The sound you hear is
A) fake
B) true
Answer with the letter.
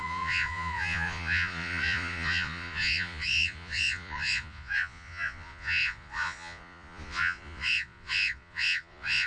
A